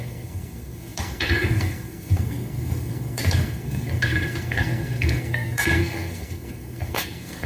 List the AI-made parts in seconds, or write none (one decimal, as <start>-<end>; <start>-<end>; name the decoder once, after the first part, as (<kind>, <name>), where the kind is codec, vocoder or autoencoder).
0.0-7.5 (codec, SNAC)